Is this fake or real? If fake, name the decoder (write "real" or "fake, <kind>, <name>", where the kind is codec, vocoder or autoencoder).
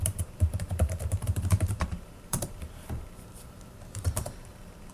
fake, vocoder, BigVGAN v2